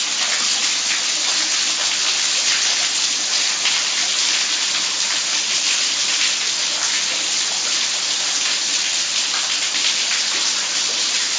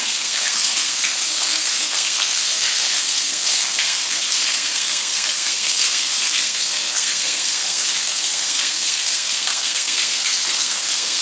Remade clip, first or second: second